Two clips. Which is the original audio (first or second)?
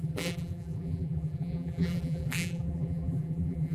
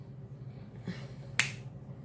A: second